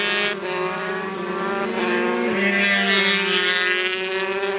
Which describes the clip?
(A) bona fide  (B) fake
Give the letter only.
A